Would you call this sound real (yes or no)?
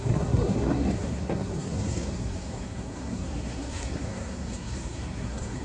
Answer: no